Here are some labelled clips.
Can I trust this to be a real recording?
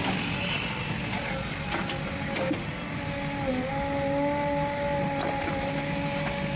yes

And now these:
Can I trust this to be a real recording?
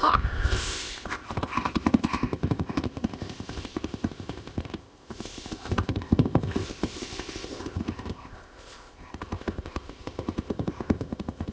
no